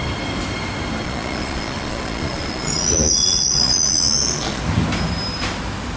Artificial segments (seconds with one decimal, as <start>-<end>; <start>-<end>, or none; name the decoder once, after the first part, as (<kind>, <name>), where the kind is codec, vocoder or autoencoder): 1.0-4.6 (vocoder, Vocos)